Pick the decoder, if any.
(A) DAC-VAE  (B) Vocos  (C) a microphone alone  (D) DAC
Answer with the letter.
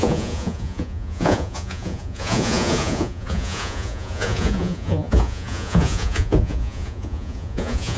B